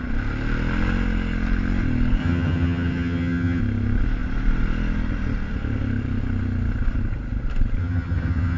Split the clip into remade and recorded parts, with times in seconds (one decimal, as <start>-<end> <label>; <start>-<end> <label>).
0.0-2.2 recorded; 2.2-3.6 remade; 3.6-7.8 recorded; 7.8-8.6 remade